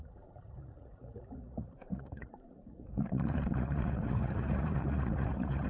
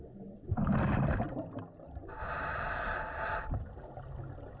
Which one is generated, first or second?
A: first